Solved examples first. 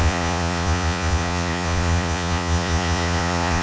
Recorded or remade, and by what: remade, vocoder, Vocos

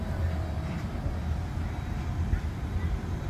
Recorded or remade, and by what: recorded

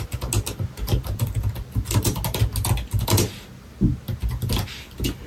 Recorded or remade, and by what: recorded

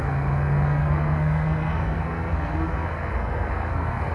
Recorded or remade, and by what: remade, codec, SNAC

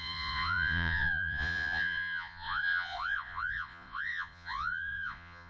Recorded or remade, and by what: remade, vocoder, Vocos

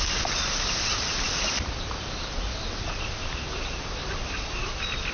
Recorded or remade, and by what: remade, vocoder, BigVGAN v2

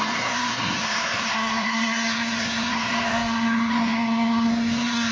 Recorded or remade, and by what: remade, codec, SNAC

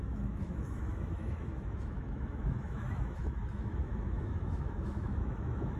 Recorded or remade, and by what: remade, autoencoder, DAC-VAE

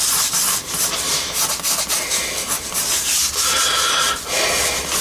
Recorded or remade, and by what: recorded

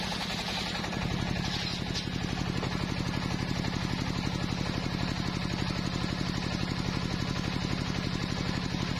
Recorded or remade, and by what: recorded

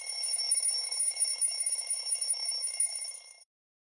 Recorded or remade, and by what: remade, autoencoder, DAC-VAE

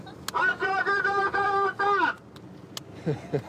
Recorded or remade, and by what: recorded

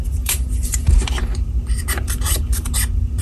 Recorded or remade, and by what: remade, vocoder, BigVGAN v2